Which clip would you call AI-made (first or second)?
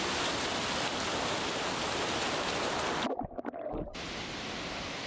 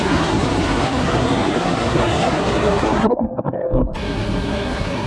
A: second